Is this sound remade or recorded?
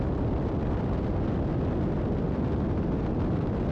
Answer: recorded